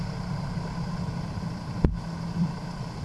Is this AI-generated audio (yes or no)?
no